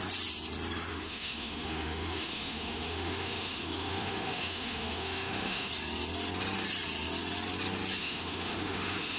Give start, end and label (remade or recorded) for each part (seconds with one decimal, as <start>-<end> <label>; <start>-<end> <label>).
0.0-0.9 recorded; 0.9-5.7 remade; 5.7-8.0 recorded; 8.0-9.2 remade